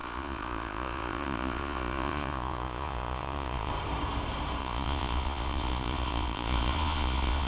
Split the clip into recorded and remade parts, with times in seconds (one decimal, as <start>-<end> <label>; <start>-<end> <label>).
0.0-3.7 remade; 3.7-4.6 recorded; 4.6-7.5 remade